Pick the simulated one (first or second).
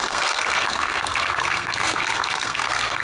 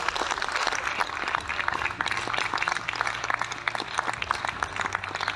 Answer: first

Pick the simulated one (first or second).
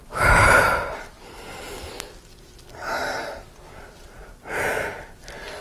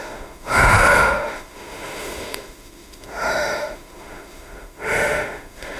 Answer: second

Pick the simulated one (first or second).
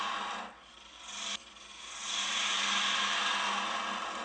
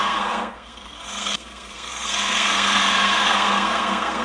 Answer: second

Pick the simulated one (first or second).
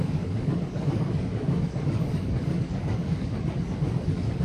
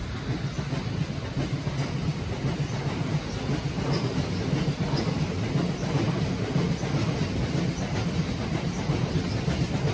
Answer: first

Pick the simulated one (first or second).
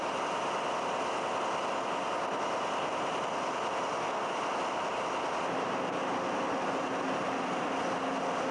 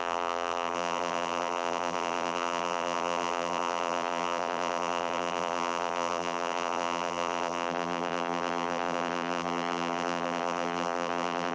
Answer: second